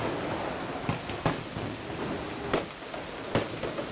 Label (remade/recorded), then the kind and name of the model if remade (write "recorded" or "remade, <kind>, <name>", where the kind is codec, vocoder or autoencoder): recorded